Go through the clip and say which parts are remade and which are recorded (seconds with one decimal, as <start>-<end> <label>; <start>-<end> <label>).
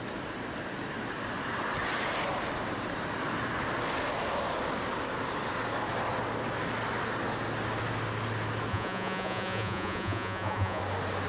0.0-8.7 recorded; 8.7-10.8 remade; 10.8-11.3 recorded